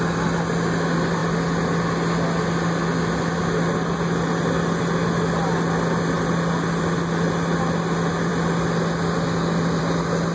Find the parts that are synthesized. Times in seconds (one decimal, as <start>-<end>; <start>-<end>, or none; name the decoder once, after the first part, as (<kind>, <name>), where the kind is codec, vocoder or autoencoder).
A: none